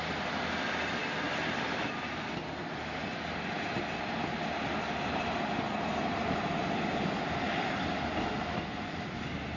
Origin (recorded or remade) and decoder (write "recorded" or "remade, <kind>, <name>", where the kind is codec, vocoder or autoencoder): recorded